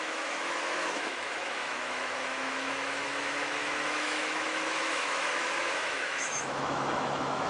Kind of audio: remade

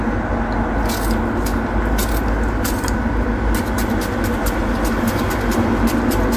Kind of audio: recorded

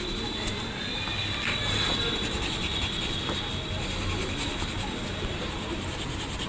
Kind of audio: recorded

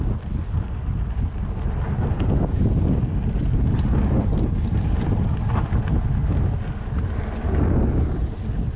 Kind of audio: recorded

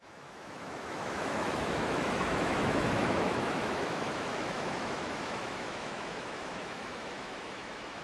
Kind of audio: remade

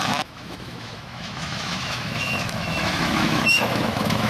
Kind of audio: remade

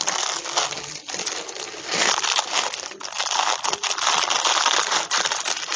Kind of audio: recorded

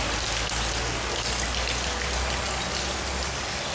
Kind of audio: recorded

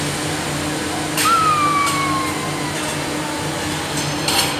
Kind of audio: recorded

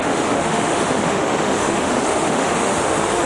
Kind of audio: remade